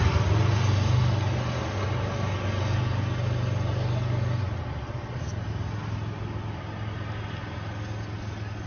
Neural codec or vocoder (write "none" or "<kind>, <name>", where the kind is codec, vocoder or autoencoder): none